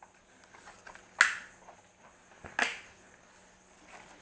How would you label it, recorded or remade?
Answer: recorded